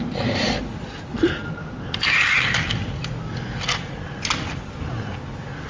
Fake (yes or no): no